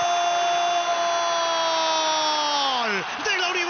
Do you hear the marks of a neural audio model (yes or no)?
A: no